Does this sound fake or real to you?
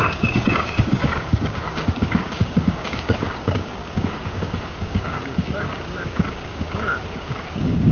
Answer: fake